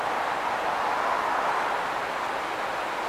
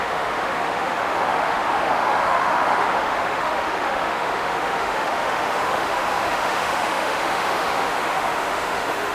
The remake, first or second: second